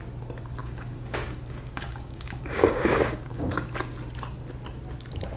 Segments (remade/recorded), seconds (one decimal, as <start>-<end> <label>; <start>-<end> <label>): 0.0-0.6 recorded; 0.6-3.7 remade; 3.7-5.4 recorded